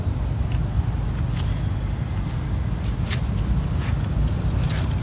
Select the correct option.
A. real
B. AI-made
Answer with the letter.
A